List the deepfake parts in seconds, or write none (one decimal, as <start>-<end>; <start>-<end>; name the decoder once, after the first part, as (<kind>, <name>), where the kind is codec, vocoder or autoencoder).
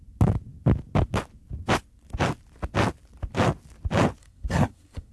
4.2-5.1 (codec, SNAC)